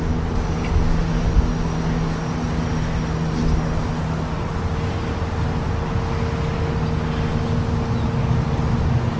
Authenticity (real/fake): real